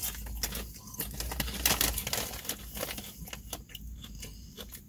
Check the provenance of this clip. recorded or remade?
recorded